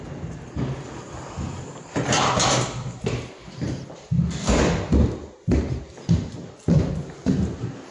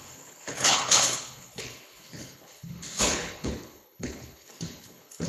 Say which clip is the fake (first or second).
second